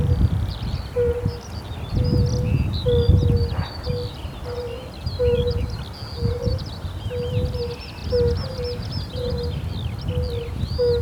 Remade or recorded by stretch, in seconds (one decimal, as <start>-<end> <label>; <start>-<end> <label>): 0.0-11.0 recorded